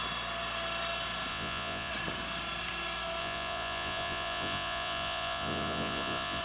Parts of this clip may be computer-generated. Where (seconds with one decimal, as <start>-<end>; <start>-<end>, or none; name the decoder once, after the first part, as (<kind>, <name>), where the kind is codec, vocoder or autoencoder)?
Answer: 1.3-1.9 (vocoder, Vocos); 3.2-6.4